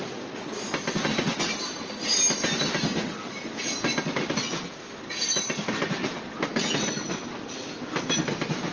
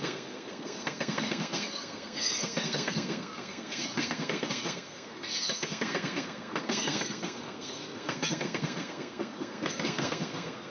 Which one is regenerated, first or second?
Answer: second